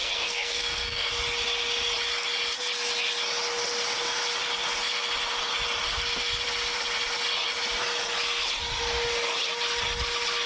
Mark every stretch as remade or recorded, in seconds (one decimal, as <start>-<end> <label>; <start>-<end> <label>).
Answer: 0.0-1.1 remade; 1.1-10.5 recorded